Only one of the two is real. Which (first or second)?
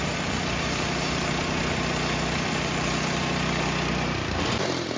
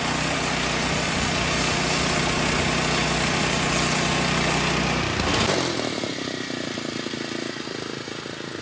second